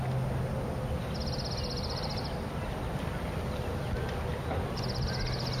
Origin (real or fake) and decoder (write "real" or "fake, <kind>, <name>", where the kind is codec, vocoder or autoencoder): real